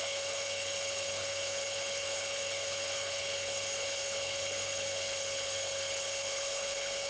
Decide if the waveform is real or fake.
fake